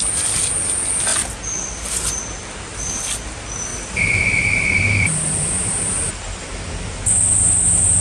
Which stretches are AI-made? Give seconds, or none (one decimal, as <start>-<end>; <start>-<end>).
3.7-6.1

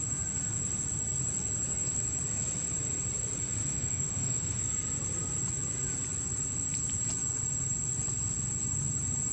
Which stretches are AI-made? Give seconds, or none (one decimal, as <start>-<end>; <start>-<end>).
3.6-4.6